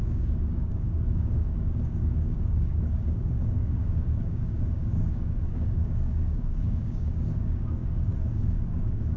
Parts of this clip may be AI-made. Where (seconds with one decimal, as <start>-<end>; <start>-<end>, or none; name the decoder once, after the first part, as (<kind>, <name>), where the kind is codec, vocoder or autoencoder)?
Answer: 0.0-9.2 (codec, DAC)

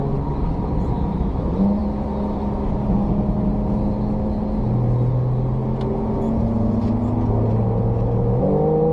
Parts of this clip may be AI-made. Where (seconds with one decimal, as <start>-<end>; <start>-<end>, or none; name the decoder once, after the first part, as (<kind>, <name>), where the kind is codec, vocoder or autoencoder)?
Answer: none

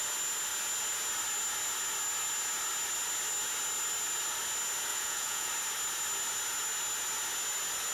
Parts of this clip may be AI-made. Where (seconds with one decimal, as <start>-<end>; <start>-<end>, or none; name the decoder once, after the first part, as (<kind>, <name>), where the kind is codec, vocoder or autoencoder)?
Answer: 4.9-5.5 (vocoder, Vocos)

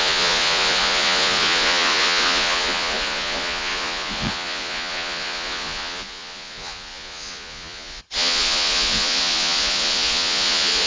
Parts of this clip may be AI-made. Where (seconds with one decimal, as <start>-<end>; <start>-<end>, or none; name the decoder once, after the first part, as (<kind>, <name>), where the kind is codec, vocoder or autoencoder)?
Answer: 0.0-10.9 (vocoder, Vocos)